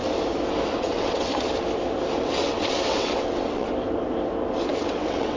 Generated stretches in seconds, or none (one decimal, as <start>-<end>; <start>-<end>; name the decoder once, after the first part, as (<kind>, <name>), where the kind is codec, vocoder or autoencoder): 0.7-1.3 (vocoder, WaveNeXt); 2.2-3.7; 4.7-5.4